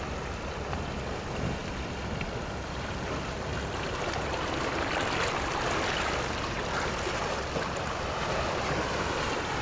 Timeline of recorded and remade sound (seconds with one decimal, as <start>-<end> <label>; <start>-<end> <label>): 0.0-9.6 recorded